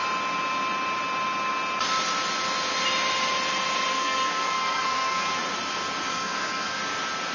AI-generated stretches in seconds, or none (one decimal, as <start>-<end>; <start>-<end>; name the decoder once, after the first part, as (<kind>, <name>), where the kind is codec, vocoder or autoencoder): 3.9-5.4 (codec, SNAC); 6.1-6.8